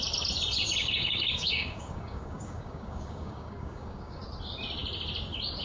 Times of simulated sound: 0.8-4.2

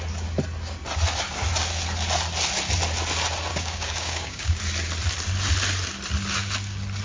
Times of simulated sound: 3.5-4.6

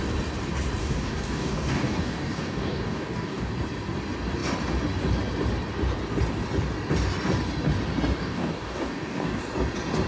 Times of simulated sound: 0.8-3.5; 8.2-9.4